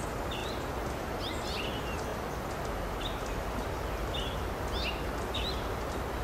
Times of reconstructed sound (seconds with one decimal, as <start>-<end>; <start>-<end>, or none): none